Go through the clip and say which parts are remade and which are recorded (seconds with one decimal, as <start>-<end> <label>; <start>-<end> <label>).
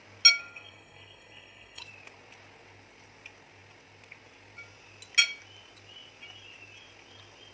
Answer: 0.0-0.4 recorded; 0.4-1.8 remade; 1.8-7.5 recorded